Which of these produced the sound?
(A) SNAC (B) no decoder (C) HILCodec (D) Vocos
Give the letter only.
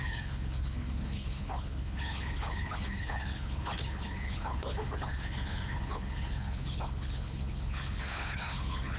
C